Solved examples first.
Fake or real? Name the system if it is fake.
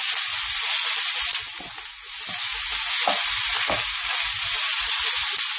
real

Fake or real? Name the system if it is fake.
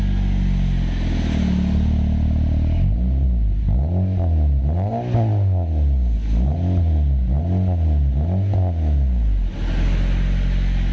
real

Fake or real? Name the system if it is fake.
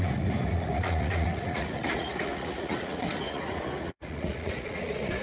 fake, vocoder, Vocos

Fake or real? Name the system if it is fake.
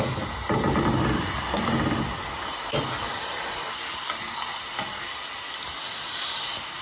real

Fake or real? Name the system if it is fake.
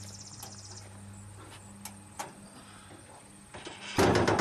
real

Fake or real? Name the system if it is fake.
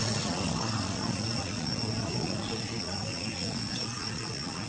fake, vocoder, Vocos